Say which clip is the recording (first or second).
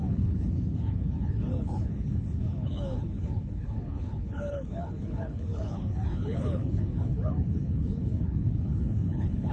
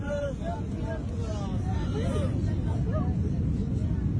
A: second